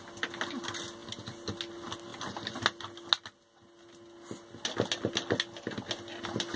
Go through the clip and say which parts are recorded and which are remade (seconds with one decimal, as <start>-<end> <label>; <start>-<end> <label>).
0.0-6.6 recorded